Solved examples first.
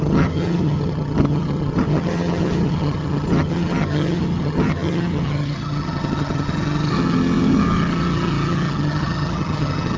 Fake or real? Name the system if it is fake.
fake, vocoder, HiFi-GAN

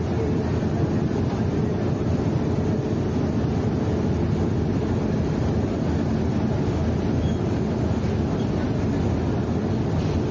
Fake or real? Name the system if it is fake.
real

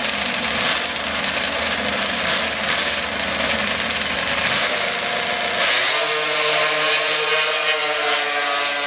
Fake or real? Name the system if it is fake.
real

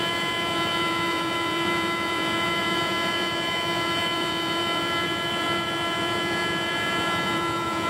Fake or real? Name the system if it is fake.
fake, vocoder, Vocos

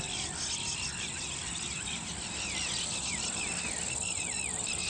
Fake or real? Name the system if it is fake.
real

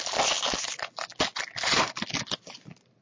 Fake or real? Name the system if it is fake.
real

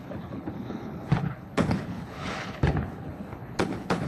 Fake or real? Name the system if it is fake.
fake, codec, HILCodec